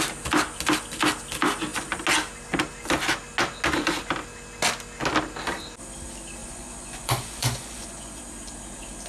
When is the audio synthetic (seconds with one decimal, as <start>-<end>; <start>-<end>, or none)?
6.4-8.2